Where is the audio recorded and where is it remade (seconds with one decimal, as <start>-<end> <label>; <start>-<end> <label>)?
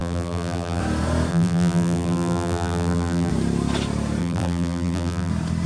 0.0-0.8 remade; 0.8-1.3 recorded; 1.3-3.3 remade; 3.3-4.2 recorded; 4.2-5.3 remade; 5.3-5.7 recorded